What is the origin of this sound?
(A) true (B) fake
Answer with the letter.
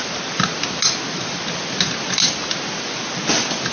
A